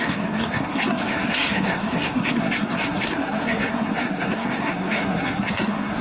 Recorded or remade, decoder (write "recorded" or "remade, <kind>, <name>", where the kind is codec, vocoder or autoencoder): remade, codec, SNAC